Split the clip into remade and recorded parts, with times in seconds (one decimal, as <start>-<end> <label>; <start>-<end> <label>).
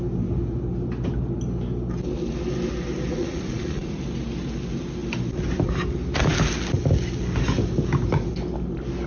0.0-3.1 recorded; 3.1-4.0 remade; 4.0-9.1 recorded